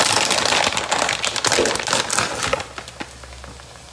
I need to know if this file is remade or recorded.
recorded